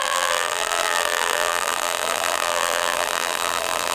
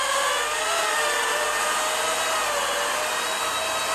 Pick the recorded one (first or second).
second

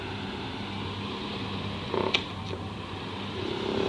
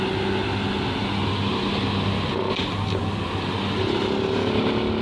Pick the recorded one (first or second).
second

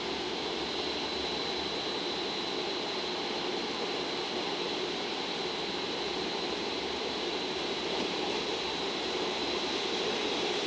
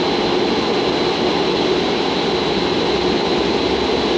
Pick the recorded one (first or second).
second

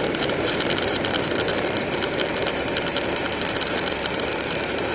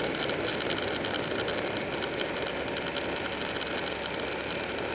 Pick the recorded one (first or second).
second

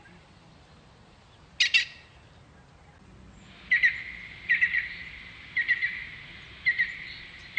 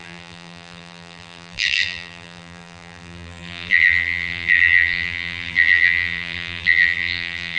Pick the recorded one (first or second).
first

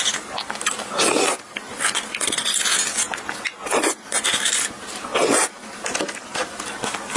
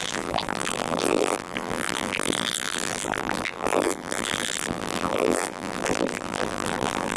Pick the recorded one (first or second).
first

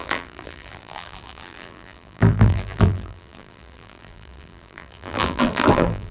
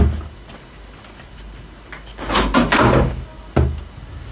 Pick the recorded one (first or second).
second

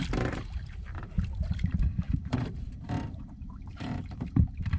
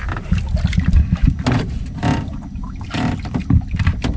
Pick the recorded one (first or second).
second